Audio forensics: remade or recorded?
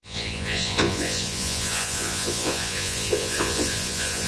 remade